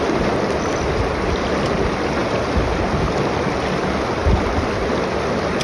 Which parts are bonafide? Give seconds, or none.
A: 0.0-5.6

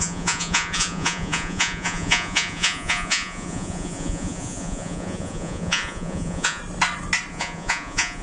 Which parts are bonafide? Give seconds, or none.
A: 6.6-7.3